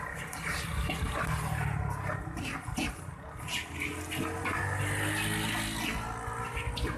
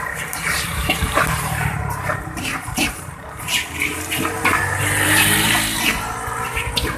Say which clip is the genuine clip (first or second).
first